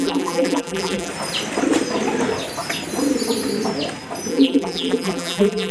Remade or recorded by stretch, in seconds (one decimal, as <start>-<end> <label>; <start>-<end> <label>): 0.0-1.1 remade; 1.1-4.3 recorded; 4.3-5.7 remade